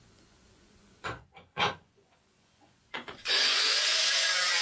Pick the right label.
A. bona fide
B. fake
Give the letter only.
B